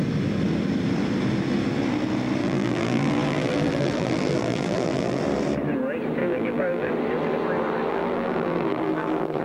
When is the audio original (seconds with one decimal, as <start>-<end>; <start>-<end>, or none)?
0.0-2.4; 5.2-6.2; 6.9-7.9